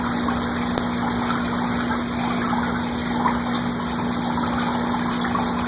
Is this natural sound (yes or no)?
yes